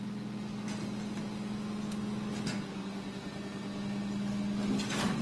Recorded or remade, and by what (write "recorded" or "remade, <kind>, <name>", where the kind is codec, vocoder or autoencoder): recorded